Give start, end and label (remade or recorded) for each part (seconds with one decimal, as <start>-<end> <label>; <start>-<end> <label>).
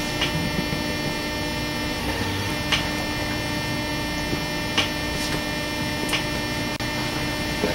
0.0-2.0 recorded; 2.0-2.5 remade; 2.5-7.7 recorded